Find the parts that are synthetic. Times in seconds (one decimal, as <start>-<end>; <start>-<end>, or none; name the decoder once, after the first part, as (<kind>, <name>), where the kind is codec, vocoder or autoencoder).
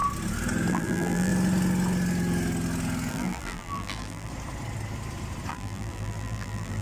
0.7-1.3 (vocoder, BigVGAN v2); 3.1-4.3; 5.5-6.8